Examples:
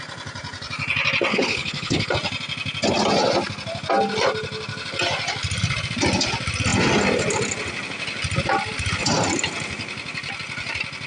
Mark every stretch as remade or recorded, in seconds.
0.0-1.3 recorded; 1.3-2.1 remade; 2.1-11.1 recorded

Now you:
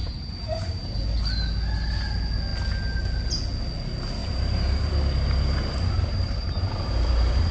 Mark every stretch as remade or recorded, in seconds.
0.0-1.0 remade; 1.0-4.2 recorded; 4.2-7.5 remade

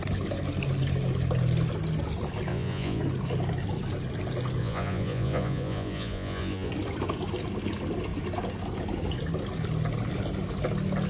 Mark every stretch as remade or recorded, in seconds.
0.0-2.5 recorded; 2.5-3.0 remade; 3.0-4.6 recorded; 4.6-6.7 remade; 6.7-11.1 recorded

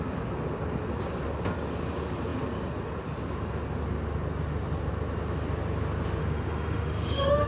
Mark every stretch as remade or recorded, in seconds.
0.0-6.2 recorded; 6.2-7.5 remade